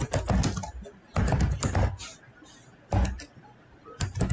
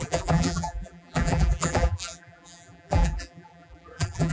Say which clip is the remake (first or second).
second